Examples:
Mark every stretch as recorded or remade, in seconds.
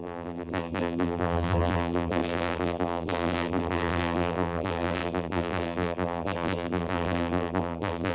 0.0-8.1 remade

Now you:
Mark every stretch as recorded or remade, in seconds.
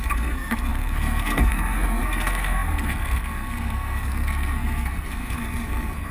0.0-6.1 remade